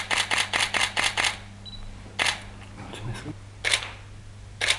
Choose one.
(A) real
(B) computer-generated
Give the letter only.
A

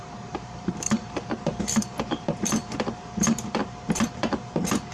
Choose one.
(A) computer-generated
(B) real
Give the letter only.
A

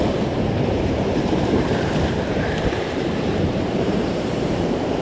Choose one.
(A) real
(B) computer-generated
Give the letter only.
B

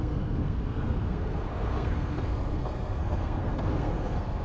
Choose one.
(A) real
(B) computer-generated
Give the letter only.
B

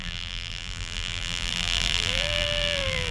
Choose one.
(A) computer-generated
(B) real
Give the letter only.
A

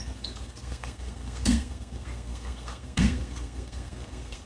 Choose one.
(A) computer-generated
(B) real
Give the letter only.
A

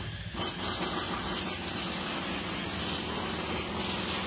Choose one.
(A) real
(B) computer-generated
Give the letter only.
A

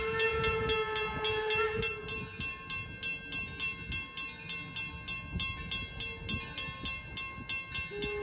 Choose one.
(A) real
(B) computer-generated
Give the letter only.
A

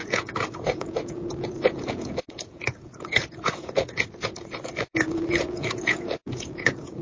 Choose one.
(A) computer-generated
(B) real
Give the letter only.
A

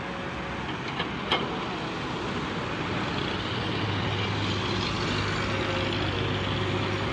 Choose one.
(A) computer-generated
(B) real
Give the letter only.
B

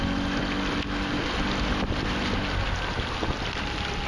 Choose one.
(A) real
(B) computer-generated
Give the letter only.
A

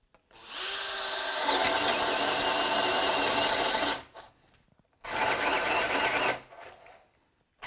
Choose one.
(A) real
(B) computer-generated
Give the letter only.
A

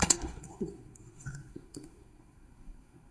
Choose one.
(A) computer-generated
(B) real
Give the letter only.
A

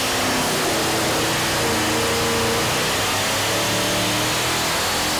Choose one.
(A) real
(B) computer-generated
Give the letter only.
A